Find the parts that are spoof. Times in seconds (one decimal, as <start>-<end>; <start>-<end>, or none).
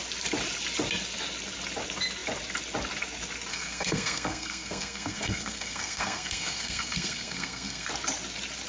3.5-7.9